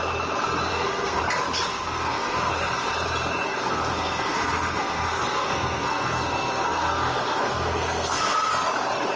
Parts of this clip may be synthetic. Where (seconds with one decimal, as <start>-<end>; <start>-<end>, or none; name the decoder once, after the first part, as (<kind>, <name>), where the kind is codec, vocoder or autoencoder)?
0.7-1.2 (codec, SNAC); 1.7-2.5; 3.5-8.5